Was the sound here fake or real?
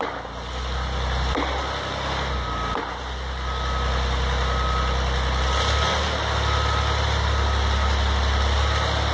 real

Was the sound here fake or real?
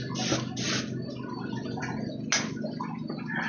real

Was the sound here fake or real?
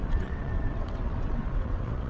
fake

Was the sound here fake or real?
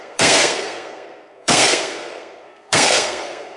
fake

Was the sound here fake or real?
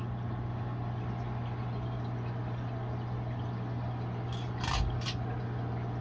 real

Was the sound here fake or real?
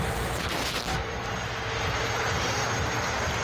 fake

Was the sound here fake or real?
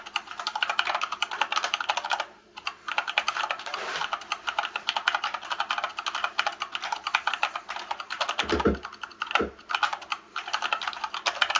real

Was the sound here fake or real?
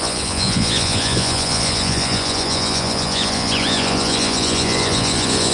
fake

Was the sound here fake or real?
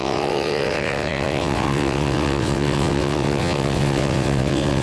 fake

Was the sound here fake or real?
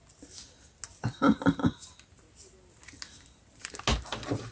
real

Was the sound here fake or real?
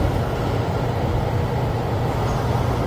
fake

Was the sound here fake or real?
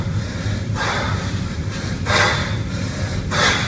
real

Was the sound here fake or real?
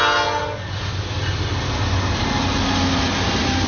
real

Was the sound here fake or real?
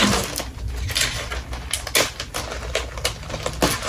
real